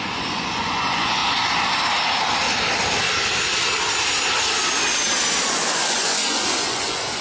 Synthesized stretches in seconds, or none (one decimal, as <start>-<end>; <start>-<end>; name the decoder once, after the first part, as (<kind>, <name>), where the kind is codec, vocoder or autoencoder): 0.0-1.2 (vocoder, Vocos); 5.5-7.2